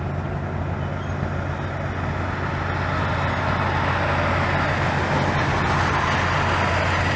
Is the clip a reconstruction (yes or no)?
no